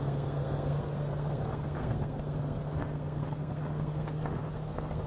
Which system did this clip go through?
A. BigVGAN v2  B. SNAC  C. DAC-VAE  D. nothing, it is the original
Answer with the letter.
B